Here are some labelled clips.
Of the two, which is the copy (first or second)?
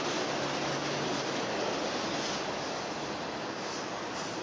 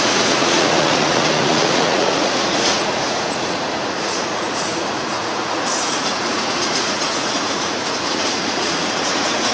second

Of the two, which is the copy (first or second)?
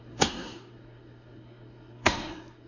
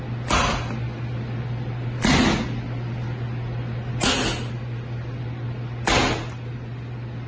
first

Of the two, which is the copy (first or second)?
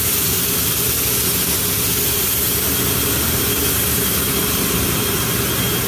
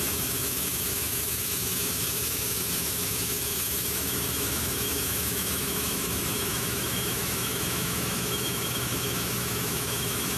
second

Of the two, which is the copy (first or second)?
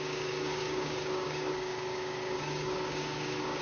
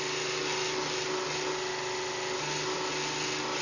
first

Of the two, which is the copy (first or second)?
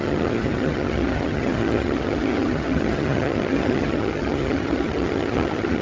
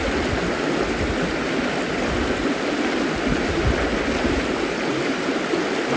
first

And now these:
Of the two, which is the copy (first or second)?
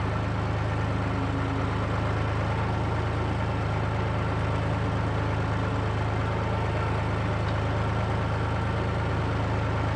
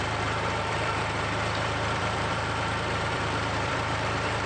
second